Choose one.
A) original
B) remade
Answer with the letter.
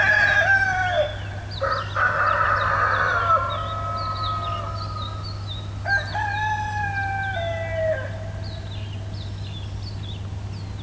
A